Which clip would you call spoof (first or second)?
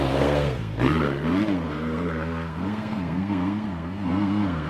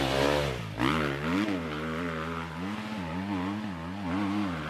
first